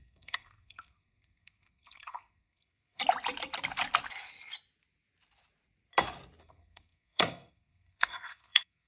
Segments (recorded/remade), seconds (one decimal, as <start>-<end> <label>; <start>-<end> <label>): 0.0-3.0 remade; 3.0-6.4 recorded; 6.4-8.9 remade